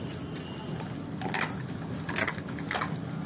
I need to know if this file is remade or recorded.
recorded